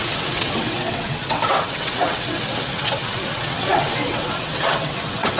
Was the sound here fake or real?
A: fake